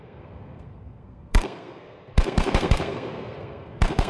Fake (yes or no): yes